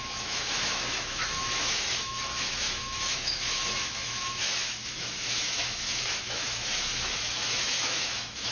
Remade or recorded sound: remade